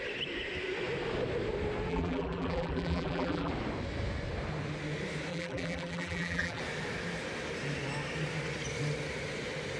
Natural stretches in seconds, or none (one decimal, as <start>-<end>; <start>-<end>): 0.0-1.9; 3.5-5.3; 6.6-9.8